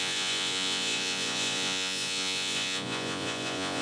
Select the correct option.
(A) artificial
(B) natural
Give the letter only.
A